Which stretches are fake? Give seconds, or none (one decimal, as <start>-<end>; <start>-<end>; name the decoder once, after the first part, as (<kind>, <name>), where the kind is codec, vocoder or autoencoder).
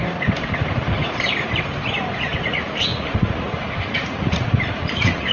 2.4-5.3 (vocoder, Vocos)